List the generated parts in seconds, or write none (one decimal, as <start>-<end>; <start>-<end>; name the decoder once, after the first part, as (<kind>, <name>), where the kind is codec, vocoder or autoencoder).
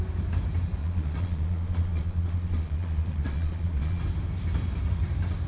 0.8-4.0 (vocoder, Vocos)